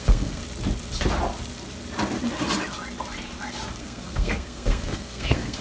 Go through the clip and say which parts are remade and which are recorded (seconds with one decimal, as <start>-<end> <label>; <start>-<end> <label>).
0.0-0.4 remade; 0.4-3.8 recorded; 3.8-5.6 remade